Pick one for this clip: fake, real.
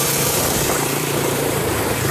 fake